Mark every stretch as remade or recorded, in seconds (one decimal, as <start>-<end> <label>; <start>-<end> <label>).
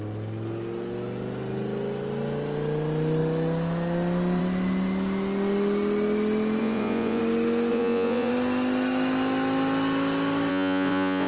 0.0-6.6 recorded; 6.6-7.2 remade; 7.2-7.7 recorded; 7.7-8.3 remade; 8.3-10.5 recorded; 10.5-11.3 remade